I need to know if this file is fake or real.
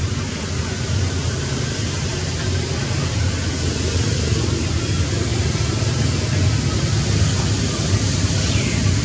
real